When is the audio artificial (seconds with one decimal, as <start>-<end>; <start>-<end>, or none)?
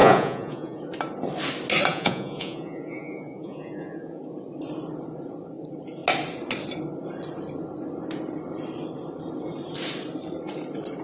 0.0-0.8; 1.9-4.2